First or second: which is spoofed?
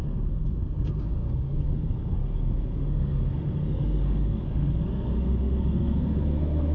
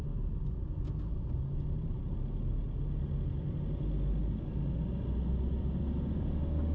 first